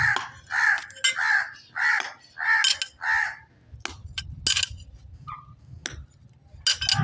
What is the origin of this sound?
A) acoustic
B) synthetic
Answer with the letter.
A